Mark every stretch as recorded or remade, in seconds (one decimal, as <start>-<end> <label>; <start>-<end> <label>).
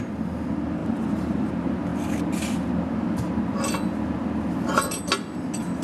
0.0-0.8 recorded; 0.8-1.5 remade; 1.5-5.8 recorded